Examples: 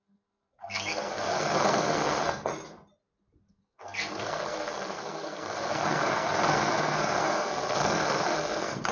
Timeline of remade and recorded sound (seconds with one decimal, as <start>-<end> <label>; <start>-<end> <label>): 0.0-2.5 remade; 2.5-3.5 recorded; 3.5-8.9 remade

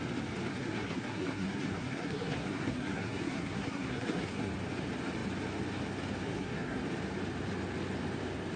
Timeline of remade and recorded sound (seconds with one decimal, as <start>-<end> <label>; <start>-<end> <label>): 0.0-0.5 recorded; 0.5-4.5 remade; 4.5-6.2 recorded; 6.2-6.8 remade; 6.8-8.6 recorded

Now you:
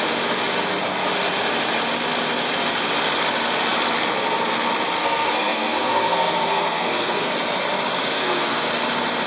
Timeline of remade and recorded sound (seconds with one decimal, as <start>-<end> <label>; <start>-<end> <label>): 0.0-5.0 recorded; 5.0-7.3 remade; 7.3-8.1 recorded; 8.1-8.7 remade; 8.7-9.3 recorded

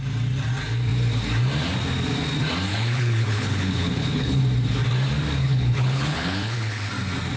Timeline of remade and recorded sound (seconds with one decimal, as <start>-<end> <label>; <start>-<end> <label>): 0.0-2.7 recorded; 2.7-4.4 remade; 4.4-5.4 recorded; 5.4-6.9 remade; 6.9-7.4 recorded

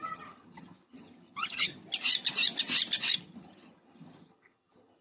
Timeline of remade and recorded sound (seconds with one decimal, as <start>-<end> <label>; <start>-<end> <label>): 0.0-1.7 remade; 1.7-3.2 recorded; 3.2-5.0 remade

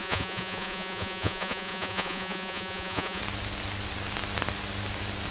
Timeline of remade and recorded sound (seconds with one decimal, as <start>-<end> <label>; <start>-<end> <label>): 0.0-3.2 remade; 3.2-5.3 recorded